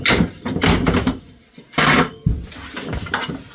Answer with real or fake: real